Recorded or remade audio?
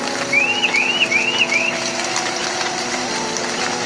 remade